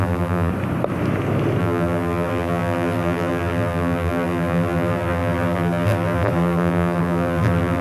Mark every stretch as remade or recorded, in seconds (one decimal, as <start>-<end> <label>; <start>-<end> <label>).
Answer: 0.0-0.5 remade; 0.5-1.6 recorded; 1.6-7.8 remade